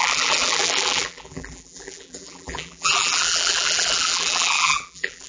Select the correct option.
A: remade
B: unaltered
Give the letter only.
A